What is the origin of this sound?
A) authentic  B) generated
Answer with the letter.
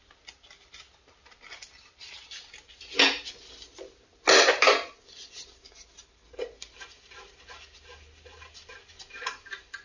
A